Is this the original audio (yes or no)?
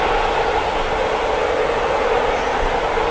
yes